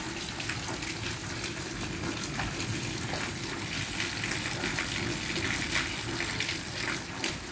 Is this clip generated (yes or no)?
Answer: no